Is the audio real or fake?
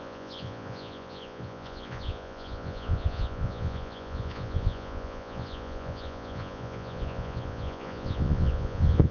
fake